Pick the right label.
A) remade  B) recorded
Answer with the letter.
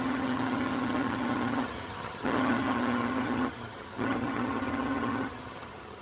A